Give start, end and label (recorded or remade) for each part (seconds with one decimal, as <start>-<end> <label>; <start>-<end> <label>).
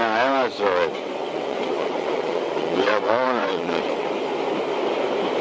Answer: 0.0-0.9 recorded; 0.9-4.1 remade; 4.1-5.4 recorded